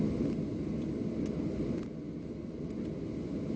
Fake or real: real